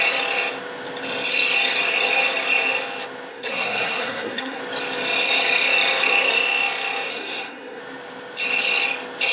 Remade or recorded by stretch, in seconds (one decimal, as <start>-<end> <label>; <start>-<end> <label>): 0.0-3.3 recorded; 3.3-4.6 remade; 4.6-7.1 recorded; 7.1-7.8 remade; 7.8-9.3 recorded